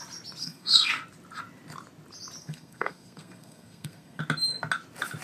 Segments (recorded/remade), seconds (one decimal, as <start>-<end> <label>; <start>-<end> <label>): 0.0-0.4 recorded; 0.4-0.9 remade; 0.9-2.4 recorded; 2.4-4.2 remade; 4.2-5.2 recorded